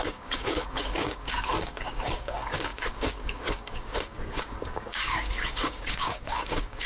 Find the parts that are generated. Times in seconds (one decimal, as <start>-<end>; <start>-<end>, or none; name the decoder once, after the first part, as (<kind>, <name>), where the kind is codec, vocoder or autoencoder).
0.0-6.9 (codec, DAC)